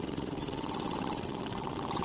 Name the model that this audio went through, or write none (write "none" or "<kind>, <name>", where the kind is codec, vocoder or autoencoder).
vocoder, WaveNeXt